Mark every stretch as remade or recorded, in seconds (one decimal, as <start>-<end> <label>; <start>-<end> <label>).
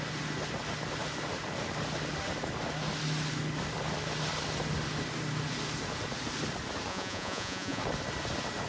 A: 0.0-6.9 recorded; 6.9-7.8 remade; 7.8-8.7 recorded